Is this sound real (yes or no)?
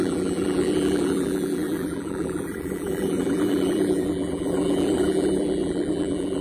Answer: no